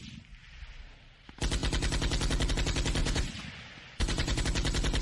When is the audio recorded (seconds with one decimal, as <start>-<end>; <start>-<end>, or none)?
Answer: 0.0-3.0; 4.4-5.0